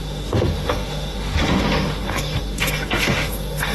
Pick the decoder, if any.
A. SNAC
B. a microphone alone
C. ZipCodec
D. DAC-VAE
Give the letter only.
D